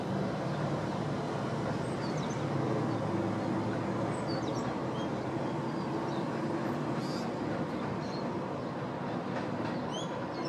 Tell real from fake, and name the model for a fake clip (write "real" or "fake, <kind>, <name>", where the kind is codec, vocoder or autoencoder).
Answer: real